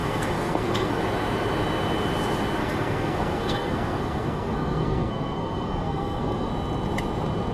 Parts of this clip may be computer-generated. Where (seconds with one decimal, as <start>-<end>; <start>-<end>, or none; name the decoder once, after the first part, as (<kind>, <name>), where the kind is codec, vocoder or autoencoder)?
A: 0.0-1.0 (codec, SNAC); 2.6-6.5